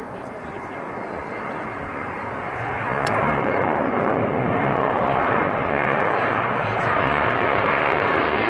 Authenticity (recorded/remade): remade